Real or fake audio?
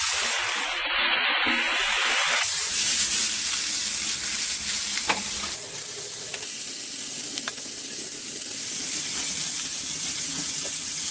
fake